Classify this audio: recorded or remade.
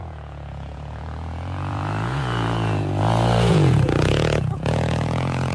remade